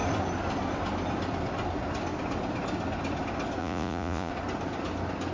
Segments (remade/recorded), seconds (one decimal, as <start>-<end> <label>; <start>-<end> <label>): 0.0-3.6 recorded; 3.6-4.3 remade; 4.3-5.3 recorded